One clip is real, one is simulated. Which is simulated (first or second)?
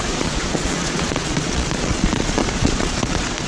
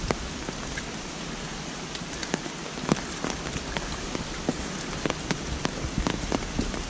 first